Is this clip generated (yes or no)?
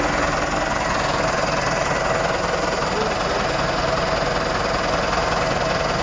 no